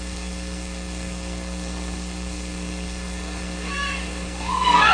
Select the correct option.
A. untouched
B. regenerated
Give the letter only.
B